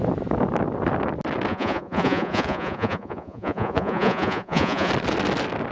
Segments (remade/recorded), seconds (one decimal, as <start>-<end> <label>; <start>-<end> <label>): 0.0-1.5 recorded; 1.5-4.9 remade; 4.9-5.7 recorded